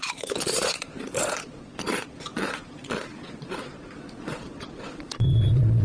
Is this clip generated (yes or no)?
yes